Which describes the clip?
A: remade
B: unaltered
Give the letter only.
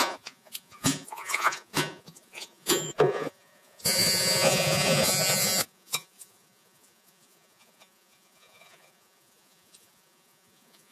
A